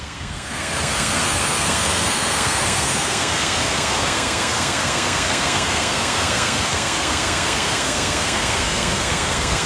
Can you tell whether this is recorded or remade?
remade